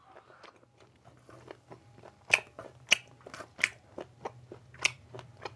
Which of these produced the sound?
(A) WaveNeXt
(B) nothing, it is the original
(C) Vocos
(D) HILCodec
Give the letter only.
B